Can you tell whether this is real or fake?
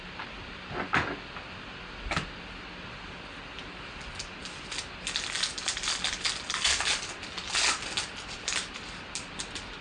real